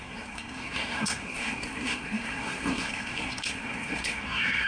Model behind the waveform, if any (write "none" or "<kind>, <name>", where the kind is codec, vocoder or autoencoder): codec, SNAC